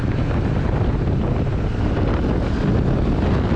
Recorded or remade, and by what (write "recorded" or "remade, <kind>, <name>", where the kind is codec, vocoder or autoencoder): recorded